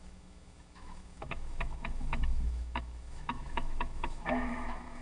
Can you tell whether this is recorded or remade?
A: remade